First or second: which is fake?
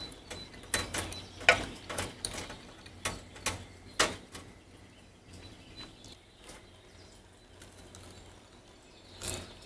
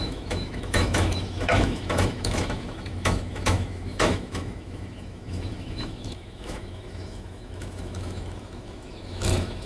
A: second